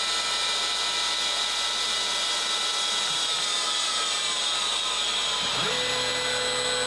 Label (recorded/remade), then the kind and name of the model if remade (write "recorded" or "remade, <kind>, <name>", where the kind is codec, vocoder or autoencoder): recorded